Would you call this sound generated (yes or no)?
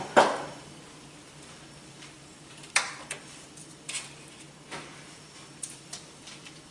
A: yes